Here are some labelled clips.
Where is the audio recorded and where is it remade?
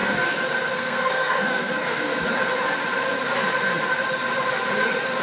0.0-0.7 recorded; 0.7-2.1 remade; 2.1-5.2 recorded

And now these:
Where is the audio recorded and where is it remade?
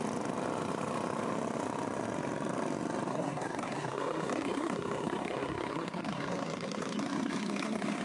0.0-3.1 recorded; 3.1-8.0 remade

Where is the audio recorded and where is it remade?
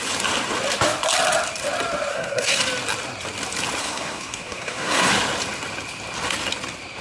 0.0-2.1 recorded; 2.1-2.6 remade; 2.6-3.8 recorded; 3.8-5.1 remade; 5.1-7.0 recorded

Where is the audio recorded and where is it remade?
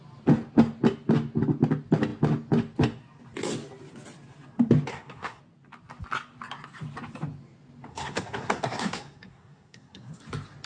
0.0-4.9 recorded; 4.9-5.4 remade; 5.4-7.9 recorded; 7.9-10.2 remade; 10.2-10.7 recorded